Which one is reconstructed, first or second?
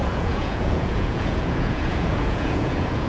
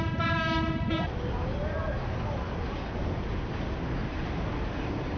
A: first